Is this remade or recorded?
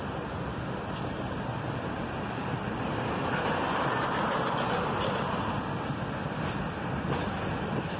recorded